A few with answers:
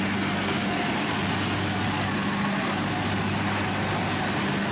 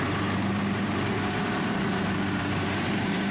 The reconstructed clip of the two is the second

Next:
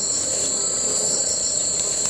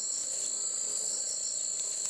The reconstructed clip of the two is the first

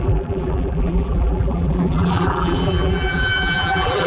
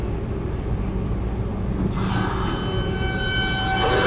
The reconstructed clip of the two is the first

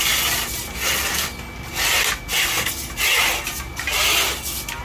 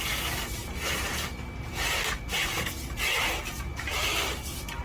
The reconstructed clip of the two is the second